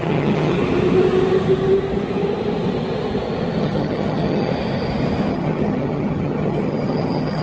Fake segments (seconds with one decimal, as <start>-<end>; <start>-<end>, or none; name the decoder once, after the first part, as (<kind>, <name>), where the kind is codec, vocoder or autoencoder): 0.0-0.6 (vocoder, HiFi-GAN); 3.6-4.5; 5.3-7.4